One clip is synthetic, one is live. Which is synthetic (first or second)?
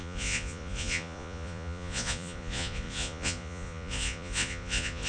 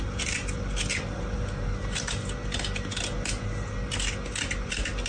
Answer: first